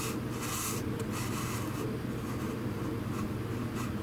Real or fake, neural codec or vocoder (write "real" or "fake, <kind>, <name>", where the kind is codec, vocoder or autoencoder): real